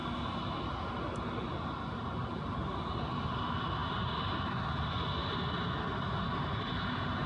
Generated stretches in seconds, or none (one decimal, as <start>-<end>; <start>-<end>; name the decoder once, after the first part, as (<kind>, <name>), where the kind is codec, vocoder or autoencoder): none